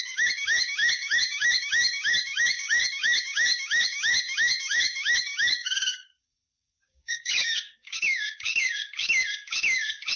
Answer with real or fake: fake